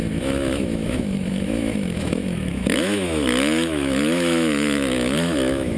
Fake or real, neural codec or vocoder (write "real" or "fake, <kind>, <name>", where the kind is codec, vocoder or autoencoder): fake, autoencoder, DAC-VAE